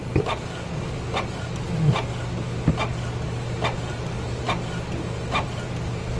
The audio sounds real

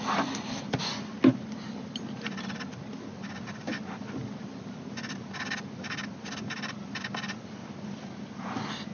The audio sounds real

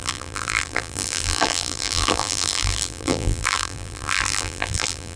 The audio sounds fake